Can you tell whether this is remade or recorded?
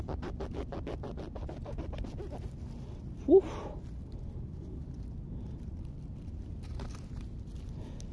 recorded